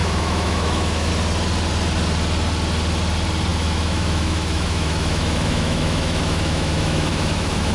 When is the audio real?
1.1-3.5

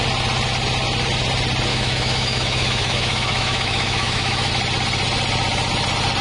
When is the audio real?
0.0-1.7; 4.5-6.2

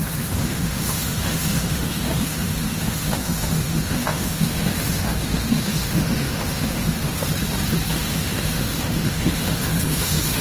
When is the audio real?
7.2-7.9

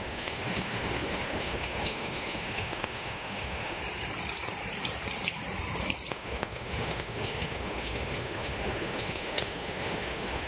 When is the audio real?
3.8-6.1

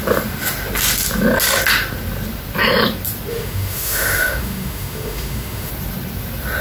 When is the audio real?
0.0-3.3; 5.7-6.6